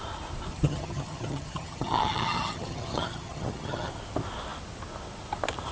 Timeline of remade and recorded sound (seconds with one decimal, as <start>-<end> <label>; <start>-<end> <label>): 0.0-0.5 recorded; 0.5-3.9 remade; 3.9-5.7 recorded